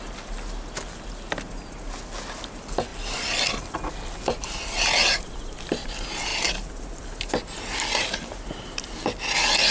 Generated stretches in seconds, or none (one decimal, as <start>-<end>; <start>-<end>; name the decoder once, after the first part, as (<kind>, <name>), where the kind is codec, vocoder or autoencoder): 2.9-3.9 (vocoder, BigVGAN v2); 6.3-7.3